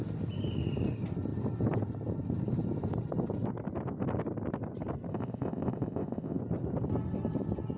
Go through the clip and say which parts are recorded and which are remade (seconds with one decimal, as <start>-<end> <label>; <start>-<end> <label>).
0.0-5.1 recorded; 5.1-6.4 remade; 6.4-7.8 recorded